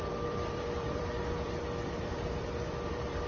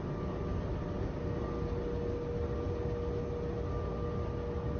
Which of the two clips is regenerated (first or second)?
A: first